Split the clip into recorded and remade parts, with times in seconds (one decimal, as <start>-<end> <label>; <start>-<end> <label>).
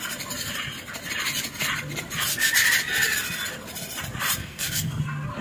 0.0-4.4 recorded; 4.4-5.0 remade; 5.0-5.4 recorded